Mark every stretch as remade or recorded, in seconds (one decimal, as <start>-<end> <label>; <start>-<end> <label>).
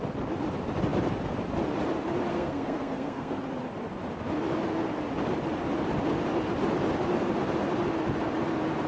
0.0-2.3 recorded; 2.3-3.4 remade; 3.4-8.9 recorded